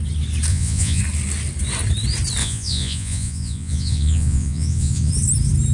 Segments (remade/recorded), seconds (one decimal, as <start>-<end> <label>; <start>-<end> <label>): 0.0-0.5 recorded; 0.5-1.0 remade; 1.0-2.4 recorded; 2.4-5.1 remade; 5.1-5.7 recorded